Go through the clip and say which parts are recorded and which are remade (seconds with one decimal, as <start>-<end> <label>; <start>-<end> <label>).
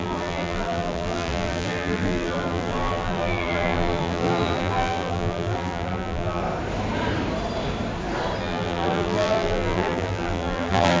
0.0-6.4 remade; 6.4-8.4 recorded; 8.4-11.0 remade